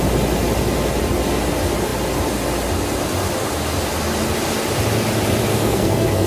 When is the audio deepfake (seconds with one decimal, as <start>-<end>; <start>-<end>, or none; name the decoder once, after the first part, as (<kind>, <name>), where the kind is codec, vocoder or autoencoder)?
5.5-6.3 (codec, SNAC)